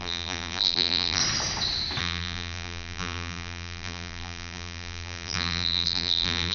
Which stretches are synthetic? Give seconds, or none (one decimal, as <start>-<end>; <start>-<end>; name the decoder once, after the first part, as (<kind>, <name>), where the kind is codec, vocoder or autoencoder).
0.0-1.2 (vocoder, BigVGAN v2); 2.0-6.5